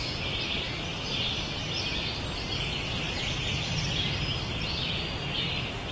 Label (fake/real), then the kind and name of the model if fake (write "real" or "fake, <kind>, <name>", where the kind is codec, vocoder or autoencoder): real